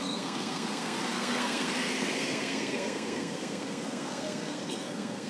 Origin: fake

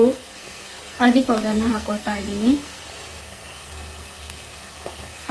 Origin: fake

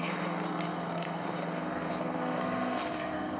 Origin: fake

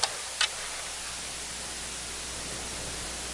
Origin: real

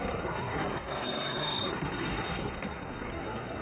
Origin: fake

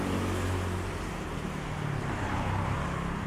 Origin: real